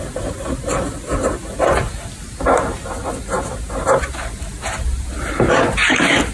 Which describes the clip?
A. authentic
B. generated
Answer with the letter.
A